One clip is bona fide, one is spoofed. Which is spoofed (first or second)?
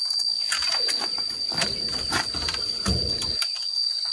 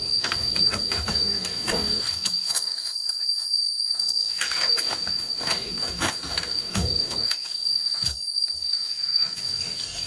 second